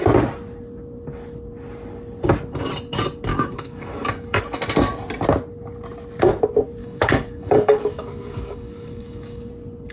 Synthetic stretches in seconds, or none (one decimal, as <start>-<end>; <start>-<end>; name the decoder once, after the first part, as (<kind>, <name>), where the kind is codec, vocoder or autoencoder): 3.3-4.4 (codec, DAC); 6.8-9.5